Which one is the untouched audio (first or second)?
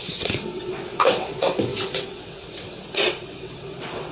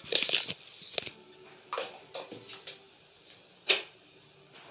second